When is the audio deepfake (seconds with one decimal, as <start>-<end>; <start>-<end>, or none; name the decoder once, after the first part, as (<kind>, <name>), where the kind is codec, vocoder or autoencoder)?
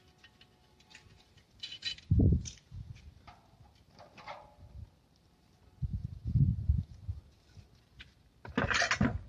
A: 0.6-2.9 (vocoder, BigVGAN v2); 5.9-7.3